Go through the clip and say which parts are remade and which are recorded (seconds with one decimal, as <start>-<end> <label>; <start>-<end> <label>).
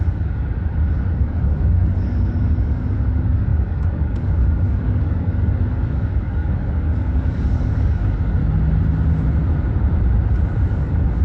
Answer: 0.0-0.5 remade; 0.5-1.1 recorded; 1.1-8.4 remade; 8.4-10.7 recorded; 10.7-11.2 remade